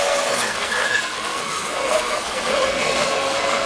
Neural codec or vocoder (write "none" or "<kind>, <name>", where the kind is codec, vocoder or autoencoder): codec, SNAC